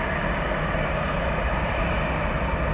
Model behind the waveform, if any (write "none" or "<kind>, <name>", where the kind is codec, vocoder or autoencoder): none